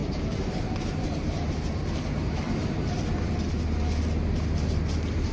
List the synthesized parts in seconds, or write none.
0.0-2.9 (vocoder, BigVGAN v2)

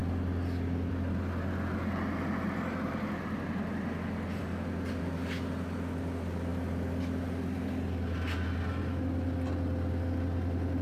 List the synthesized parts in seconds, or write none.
none